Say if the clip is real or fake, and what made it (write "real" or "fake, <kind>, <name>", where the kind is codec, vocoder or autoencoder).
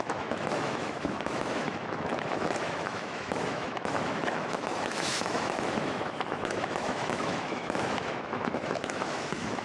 fake, autoencoder, DAC-VAE